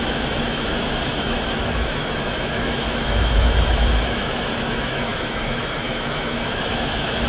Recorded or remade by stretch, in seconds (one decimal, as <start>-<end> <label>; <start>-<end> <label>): 0.0-7.3 remade